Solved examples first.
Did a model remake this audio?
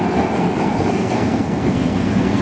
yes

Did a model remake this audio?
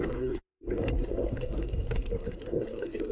yes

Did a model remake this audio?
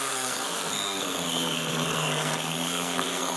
yes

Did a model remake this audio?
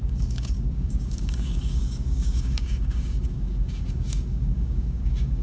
yes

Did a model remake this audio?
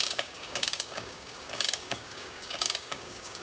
yes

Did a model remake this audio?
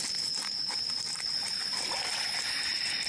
no